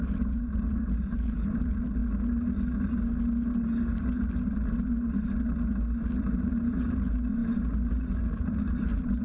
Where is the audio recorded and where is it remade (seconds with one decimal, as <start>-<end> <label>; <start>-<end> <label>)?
0.0-2.0 remade; 2.0-6.2 recorded; 6.2-9.2 remade